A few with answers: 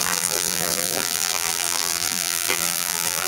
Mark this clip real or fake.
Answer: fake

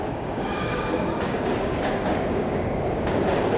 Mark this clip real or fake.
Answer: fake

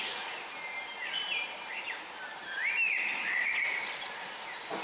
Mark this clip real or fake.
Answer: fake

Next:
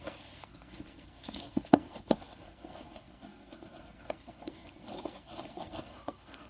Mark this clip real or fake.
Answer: fake